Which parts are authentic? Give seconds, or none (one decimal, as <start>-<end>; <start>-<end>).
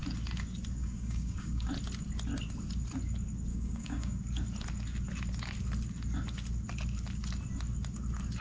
0.0-0.8; 1.7-3.5; 4.2-8.4